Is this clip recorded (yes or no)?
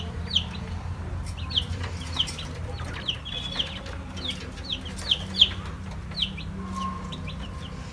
yes